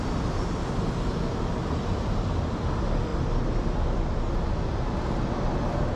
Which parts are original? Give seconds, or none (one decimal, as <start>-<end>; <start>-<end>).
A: 0.0-6.0